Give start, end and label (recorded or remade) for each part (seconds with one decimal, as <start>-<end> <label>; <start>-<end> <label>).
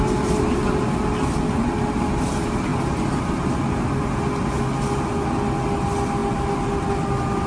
0.0-7.5 recorded